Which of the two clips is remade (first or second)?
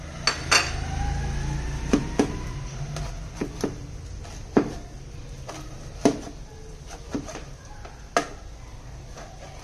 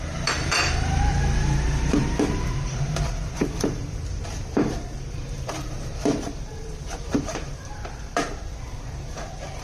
second